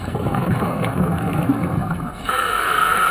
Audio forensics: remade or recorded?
remade